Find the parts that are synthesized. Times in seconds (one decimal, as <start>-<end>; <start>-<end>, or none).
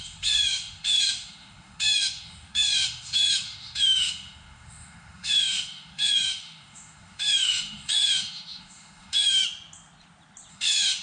0.0-9.4; 10.5-11.0